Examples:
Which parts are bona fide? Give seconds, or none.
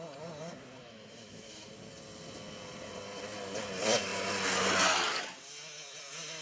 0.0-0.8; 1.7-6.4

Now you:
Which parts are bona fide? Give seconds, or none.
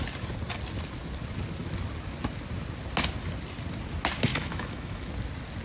0.0-4.3; 5.1-5.6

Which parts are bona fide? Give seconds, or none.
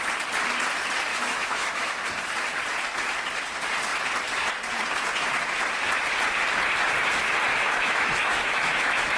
0.0-1.1; 1.9-7.5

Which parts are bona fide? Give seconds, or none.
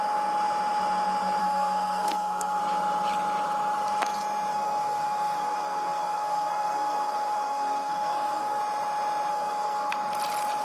0.0-1.4; 2.6-4.5; 8.6-9.3; 9.9-10.6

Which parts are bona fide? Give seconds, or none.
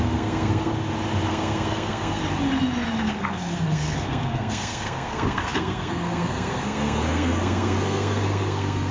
0.7-1.3; 2.2-3.0